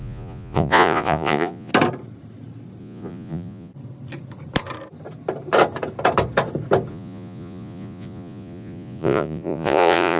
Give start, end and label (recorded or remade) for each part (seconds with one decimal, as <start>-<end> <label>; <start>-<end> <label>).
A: 0.0-1.7 remade; 1.7-2.8 recorded; 2.8-3.7 remade; 3.7-6.9 recorded; 6.9-10.2 remade